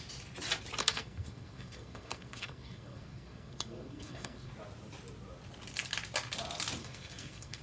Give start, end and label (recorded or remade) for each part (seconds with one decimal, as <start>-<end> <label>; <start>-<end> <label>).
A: 0.0-0.8 recorded; 0.8-4.5 remade; 4.5-6.8 recorded; 6.8-7.6 remade